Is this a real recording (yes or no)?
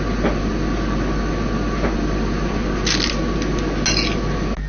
yes